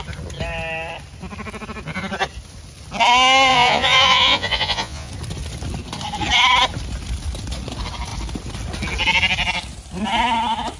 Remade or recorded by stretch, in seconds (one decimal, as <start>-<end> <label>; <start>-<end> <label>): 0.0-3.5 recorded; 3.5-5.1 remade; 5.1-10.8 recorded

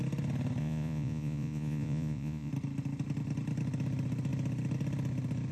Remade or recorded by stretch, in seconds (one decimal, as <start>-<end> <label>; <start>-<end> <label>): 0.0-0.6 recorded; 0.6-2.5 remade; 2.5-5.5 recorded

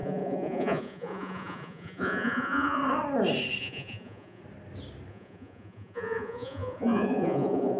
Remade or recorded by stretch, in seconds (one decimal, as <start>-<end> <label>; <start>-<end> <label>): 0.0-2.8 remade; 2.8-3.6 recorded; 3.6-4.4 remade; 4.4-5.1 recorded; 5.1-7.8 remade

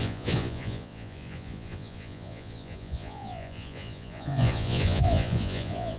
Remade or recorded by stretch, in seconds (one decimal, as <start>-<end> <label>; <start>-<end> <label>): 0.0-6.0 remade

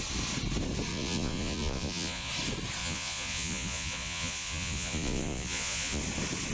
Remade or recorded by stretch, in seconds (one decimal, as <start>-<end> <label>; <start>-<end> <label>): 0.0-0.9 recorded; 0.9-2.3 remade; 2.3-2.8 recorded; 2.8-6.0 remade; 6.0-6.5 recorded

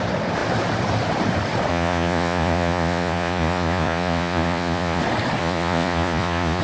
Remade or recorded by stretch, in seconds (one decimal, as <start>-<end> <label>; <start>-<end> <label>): 0.0-1.7 recorded; 1.7-5.0 remade; 5.0-5.4 recorded; 5.4-6.6 remade

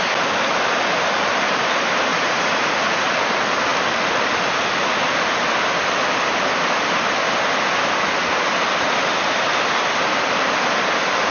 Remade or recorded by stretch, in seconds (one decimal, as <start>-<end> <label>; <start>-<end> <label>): 0.0-2.1 recorded; 2.1-3.0 remade; 3.0-11.3 recorded

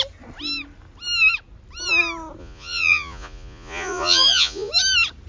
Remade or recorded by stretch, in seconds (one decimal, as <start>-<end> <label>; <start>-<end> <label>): 0.0-2.4 recorded; 2.4-4.7 remade; 4.7-5.3 recorded